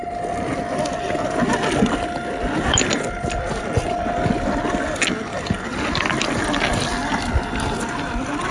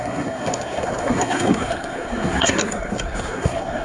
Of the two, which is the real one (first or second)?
first